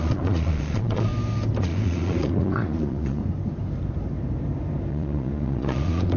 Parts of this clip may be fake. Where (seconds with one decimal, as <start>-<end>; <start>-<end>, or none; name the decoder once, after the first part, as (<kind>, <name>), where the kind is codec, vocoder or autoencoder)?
0.0-1.1 (vocoder, Vocos); 1.6-3.2; 4.9-6.2